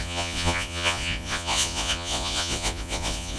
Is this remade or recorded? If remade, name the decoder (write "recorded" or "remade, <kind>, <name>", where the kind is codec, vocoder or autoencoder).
remade, vocoder, Vocos